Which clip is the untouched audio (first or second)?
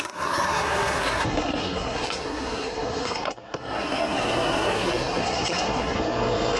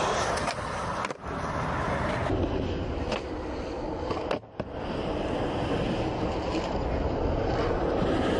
second